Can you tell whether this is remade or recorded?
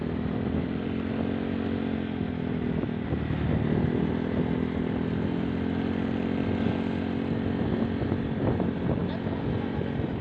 recorded